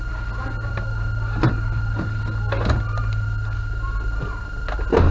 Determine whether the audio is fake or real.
real